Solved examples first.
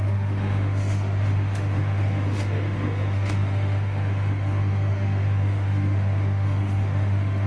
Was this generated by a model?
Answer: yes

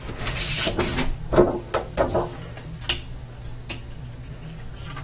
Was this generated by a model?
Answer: no